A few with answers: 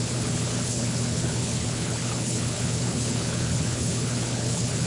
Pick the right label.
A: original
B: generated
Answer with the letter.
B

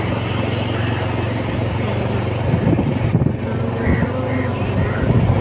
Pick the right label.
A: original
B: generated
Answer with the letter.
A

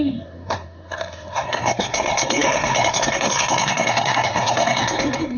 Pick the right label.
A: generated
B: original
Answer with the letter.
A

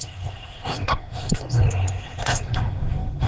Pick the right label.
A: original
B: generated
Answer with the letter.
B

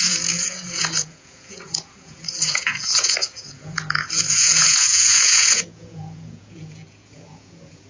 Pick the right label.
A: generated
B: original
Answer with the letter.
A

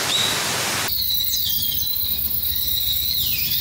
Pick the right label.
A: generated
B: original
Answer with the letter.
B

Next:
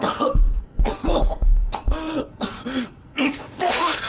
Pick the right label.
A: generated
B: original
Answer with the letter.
A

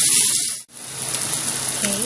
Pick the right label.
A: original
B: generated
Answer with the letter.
A